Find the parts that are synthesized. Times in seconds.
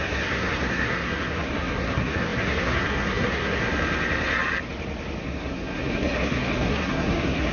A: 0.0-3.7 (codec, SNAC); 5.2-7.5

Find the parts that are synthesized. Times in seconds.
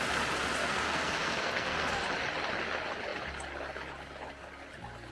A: 0.6-2.0 (codec, SNAC)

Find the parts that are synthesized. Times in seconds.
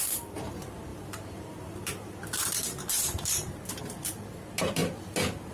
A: 0.0-4.8 (vocoder, BigVGAN v2)